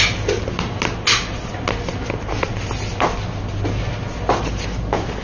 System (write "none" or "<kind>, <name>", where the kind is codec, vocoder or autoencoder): none